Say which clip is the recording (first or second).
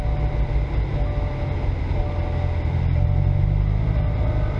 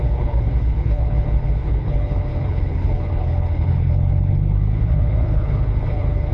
first